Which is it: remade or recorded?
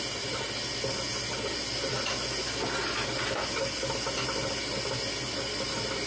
recorded